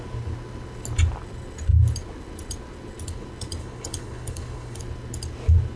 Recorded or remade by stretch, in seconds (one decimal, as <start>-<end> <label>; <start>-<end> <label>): 0.0-3.6 recorded; 3.6-4.8 remade; 4.8-5.8 recorded